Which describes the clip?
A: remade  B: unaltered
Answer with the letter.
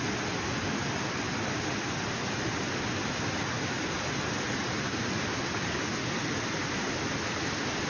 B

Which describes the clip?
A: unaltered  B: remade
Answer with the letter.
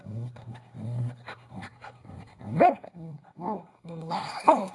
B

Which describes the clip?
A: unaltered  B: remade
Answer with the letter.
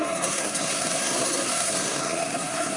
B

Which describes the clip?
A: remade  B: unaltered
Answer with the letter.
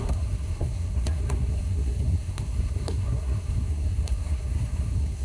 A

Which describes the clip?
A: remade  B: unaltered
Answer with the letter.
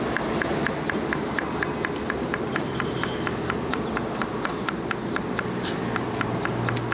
B